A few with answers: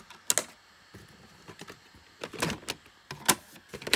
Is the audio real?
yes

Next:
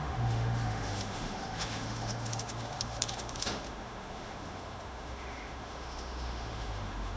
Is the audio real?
no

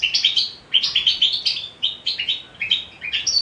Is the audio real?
yes